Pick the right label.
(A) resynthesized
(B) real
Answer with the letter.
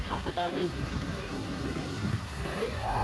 A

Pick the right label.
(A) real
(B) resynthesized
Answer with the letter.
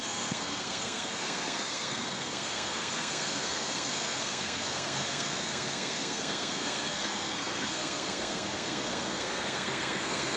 B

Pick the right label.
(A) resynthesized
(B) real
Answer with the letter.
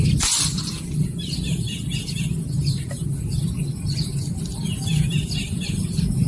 B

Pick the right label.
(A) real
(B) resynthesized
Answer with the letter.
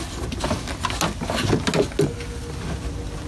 A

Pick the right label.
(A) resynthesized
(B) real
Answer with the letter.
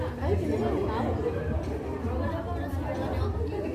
B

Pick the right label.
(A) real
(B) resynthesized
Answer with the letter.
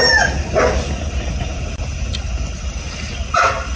A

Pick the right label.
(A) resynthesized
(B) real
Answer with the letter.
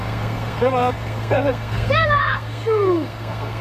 A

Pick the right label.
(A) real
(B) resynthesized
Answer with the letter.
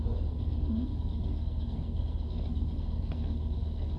B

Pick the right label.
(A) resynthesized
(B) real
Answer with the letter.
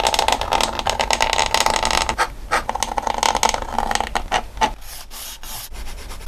B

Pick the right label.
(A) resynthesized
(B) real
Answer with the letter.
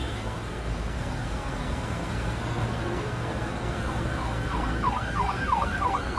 A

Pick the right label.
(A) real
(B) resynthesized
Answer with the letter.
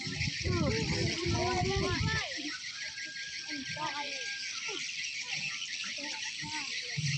A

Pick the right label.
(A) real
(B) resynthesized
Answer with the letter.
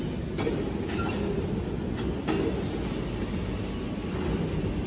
A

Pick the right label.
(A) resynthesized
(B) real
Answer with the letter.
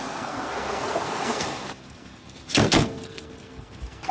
A